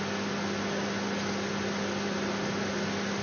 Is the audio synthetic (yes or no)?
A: no